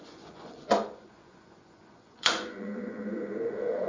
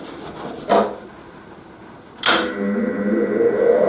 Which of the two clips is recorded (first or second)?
second